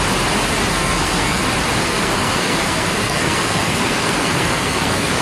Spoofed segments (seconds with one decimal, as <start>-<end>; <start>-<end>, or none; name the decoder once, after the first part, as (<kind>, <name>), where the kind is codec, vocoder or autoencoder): 0.7-1.4 (codec, SNAC); 1.8-5.2